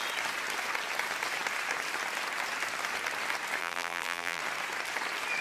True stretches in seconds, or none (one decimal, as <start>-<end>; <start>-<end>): 0.0-3.6; 4.4-5.4